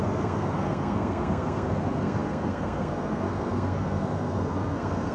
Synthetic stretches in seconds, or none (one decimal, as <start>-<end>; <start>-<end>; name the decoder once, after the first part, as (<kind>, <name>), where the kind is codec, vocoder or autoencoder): 0.0-5.1 (codec, SNAC)